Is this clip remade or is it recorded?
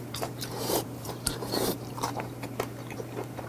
remade